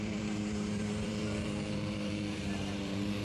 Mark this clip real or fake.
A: fake